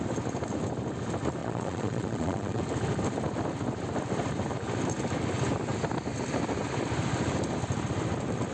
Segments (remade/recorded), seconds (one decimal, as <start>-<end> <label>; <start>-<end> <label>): 0.0-1.4 recorded; 1.4-2.6 remade; 2.6-8.5 recorded